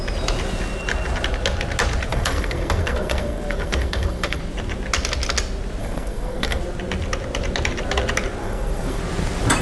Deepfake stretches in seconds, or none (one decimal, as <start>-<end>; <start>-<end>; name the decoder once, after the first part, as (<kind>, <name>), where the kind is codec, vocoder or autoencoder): 2.1-4.4 (codec, SNAC); 5.8-6.6; 8.4-9.0